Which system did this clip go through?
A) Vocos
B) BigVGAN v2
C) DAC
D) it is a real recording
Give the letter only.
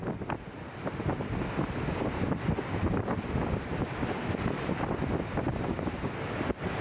D